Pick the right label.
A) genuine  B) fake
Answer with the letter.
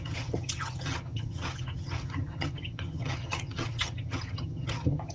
B